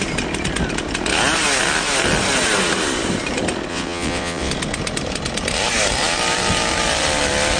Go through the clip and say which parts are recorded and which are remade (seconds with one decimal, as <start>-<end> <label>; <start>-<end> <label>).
0.0-3.7 recorded; 3.7-4.5 remade; 4.5-7.6 recorded